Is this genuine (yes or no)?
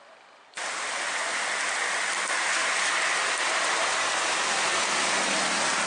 yes